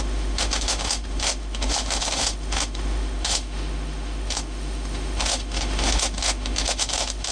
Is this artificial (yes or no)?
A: yes